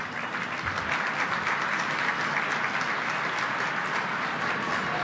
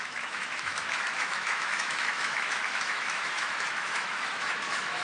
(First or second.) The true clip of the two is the first